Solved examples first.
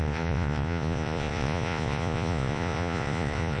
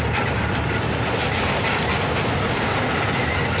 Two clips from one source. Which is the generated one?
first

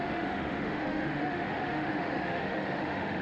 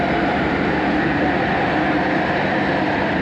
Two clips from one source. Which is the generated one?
first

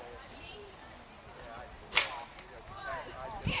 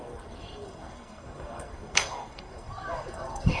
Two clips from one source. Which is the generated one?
second